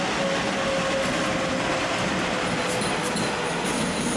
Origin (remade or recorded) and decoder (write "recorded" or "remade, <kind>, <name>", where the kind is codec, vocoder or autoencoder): recorded